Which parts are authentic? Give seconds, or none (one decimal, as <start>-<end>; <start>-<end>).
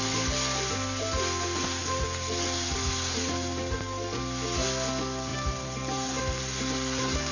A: 0.0-1.8; 3.8-5.3; 6.2-7.3